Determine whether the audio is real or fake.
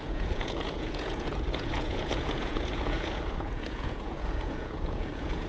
fake